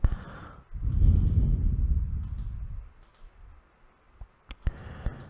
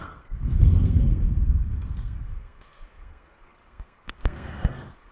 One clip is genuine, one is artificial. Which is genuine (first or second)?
first